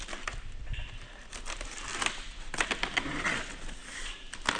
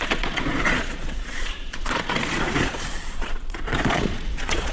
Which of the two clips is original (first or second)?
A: first